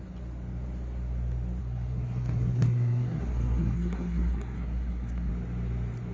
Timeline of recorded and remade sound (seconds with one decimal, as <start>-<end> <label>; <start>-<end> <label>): 0.0-1.6 recorded; 1.6-5.3 remade; 5.3-6.1 recorded